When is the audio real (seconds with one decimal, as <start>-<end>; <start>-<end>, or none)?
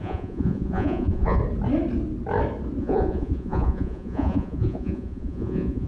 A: 1.4-2.8